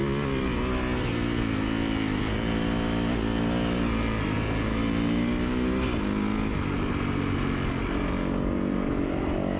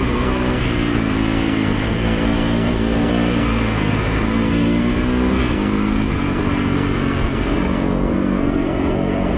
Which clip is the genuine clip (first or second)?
first